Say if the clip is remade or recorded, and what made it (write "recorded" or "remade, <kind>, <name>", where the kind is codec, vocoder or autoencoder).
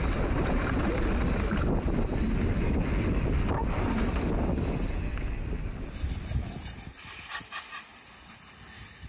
recorded